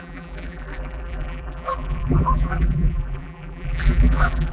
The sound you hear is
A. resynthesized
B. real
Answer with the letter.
A